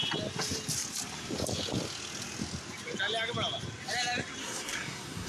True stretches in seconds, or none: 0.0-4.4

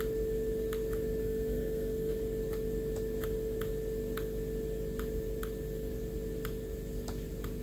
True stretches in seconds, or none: 0.0-1.2; 2.1-7.6